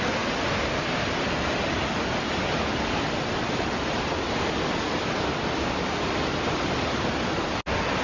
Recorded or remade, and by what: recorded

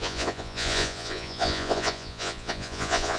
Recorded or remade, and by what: remade, vocoder, Vocos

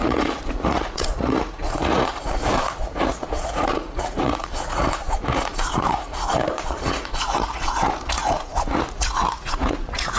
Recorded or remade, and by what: remade, vocoder, Vocos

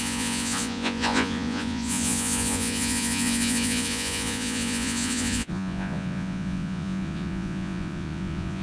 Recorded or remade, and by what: remade, vocoder, Vocos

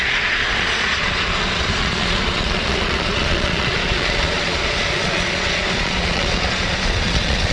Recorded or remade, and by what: remade, vocoder, Vocos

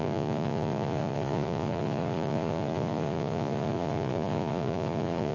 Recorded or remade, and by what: remade, vocoder, Vocos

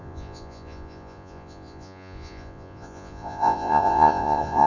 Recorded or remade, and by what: remade, vocoder, Vocos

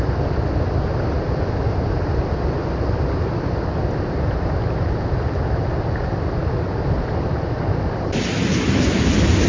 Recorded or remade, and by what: recorded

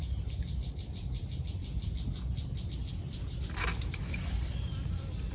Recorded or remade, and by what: recorded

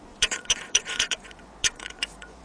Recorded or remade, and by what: remade, vocoder, Vocos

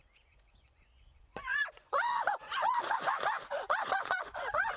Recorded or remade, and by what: remade, vocoder, Vocos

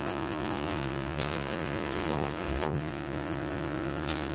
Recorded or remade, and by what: remade, vocoder, Vocos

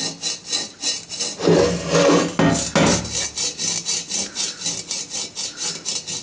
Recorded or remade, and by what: recorded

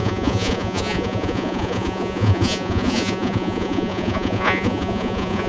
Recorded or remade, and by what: remade, vocoder, Vocos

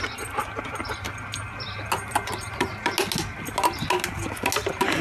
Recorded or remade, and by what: recorded